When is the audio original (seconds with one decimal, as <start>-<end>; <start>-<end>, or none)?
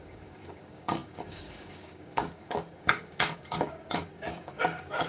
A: none